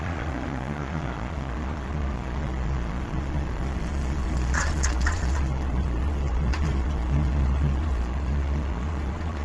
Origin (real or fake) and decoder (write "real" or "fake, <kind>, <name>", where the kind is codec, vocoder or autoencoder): fake, vocoder, Vocos